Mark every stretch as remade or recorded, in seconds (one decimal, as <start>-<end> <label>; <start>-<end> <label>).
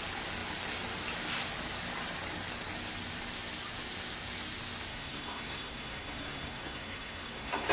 0.0-4.9 recorded; 4.9-7.7 remade